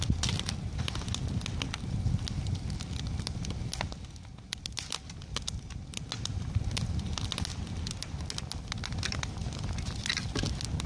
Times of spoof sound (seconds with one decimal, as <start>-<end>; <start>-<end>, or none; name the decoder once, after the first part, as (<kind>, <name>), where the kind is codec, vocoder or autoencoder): none